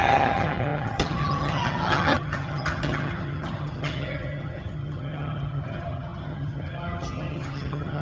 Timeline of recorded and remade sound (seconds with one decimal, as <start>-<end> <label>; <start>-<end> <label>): 0.0-8.0 remade